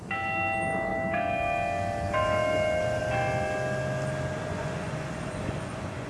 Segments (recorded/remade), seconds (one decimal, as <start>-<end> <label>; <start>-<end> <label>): 0.0-4.4 recorded; 4.4-6.1 remade